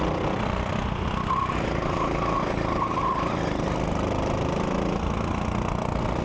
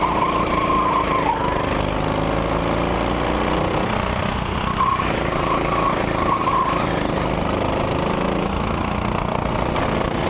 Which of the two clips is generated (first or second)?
first